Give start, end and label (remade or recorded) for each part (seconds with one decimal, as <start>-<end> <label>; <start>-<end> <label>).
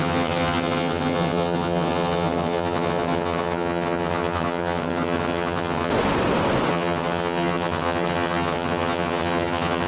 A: 0.0-5.9 remade; 5.9-6.7 recorded; 6.7-9.9 remade